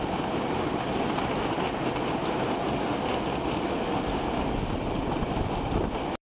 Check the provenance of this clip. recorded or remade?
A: recorded